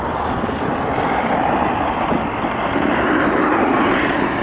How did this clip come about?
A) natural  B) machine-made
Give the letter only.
A